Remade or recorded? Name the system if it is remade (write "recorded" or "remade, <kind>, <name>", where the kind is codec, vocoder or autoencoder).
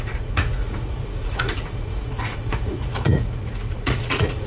remade, vocoder, Vocos